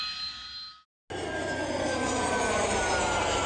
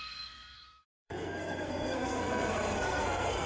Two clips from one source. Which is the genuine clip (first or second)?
first